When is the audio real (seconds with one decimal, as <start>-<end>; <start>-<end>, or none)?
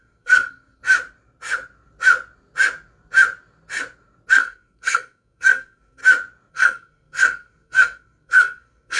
0.8-4.3; 6.0-6.5